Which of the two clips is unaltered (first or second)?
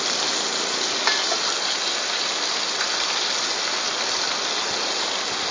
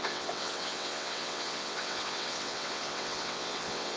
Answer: first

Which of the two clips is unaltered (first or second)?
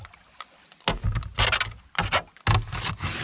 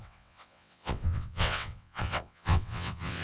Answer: first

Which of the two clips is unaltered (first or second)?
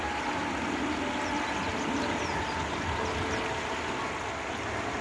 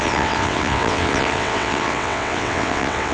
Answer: first